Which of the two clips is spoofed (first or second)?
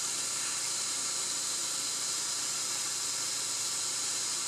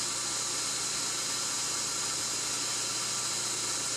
first